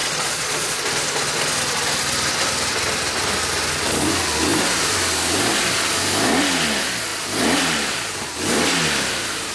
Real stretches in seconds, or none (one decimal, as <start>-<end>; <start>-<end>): 0.8-9.5